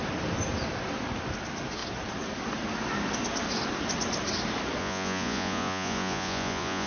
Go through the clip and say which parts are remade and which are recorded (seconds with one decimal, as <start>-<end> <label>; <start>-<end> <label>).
0.0-4.8 recorded; 4.8-6.9 remade